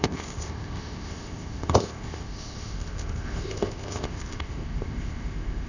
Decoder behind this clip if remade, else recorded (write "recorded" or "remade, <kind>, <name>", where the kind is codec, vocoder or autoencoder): remade, codec, ZipCodec